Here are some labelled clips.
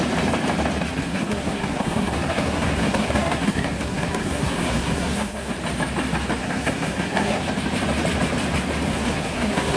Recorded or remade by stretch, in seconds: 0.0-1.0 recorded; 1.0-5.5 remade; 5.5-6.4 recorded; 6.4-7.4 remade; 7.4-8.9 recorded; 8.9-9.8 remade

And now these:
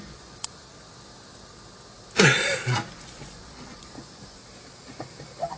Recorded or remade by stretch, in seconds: 0.0-0.6 remade; 0.6-2.9 recorded; 2.9-4.4 remade; 4.4-5.6 recorded

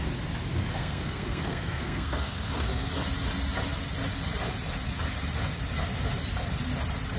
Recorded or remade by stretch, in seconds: 0.0-0.6 recorded; 0.6-2.9 remade; 2.9-7.2 recorded